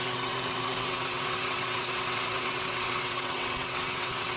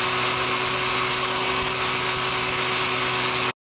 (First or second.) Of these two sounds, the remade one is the first